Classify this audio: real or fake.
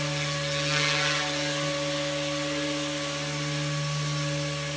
real